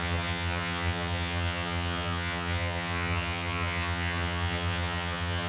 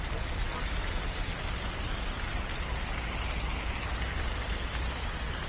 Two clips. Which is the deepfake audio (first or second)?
first